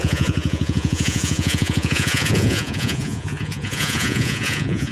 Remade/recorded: remade